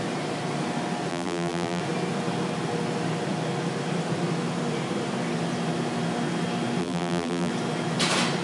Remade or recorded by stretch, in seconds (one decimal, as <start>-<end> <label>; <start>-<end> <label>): 0.0-1.1 recorded; 1.1-1.8 remade; 1.8-6.8 recorded; 6.8-7.5 remade; 7.5-8.4 recorded